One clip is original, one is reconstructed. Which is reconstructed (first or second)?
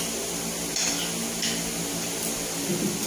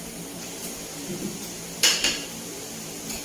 second